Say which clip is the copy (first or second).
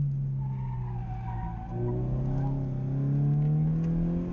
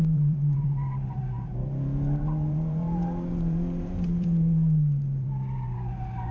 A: second